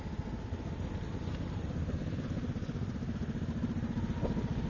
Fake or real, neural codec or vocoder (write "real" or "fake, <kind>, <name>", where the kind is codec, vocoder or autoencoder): real